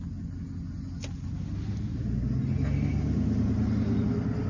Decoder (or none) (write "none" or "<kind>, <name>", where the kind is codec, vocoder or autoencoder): none